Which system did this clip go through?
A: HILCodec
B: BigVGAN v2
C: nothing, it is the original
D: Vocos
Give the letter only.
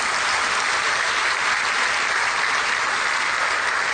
C